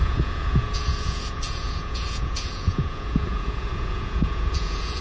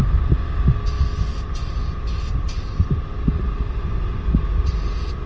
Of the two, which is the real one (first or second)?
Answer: second